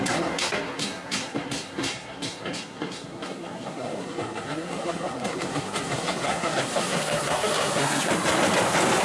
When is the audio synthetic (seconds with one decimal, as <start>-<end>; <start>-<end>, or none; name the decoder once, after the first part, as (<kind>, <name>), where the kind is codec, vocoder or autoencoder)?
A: 0.0-8.1 (codec, SNAC)